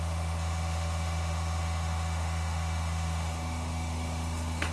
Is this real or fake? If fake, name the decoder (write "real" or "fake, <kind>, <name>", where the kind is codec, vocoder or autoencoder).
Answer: fake, autoencoder, DAC-VAE